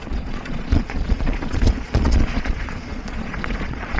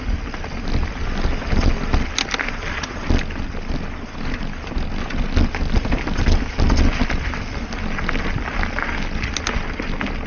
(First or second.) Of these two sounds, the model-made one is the first